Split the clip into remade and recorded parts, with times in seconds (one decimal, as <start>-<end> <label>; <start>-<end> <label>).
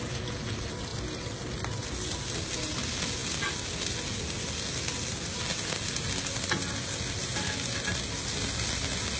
0.0-9.2 recorded